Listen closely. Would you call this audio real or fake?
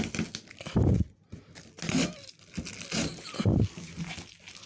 real